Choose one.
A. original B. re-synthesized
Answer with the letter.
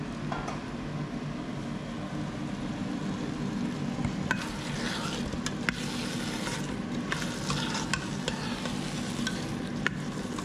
A